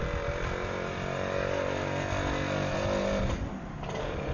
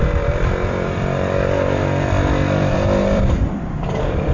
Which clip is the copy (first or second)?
second